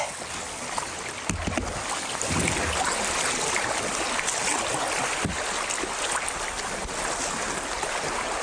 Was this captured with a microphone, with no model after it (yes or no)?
yes